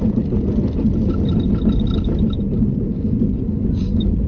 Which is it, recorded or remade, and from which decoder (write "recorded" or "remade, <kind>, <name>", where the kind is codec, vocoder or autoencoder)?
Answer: recorded